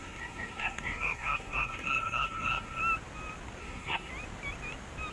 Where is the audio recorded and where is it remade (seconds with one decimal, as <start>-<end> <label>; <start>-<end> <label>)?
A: 0.0-2.8 remade; 2.8-3.6 recorded; 3.6-4.1 remade; 4.1-5.1 recorded